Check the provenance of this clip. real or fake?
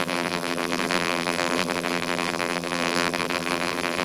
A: fake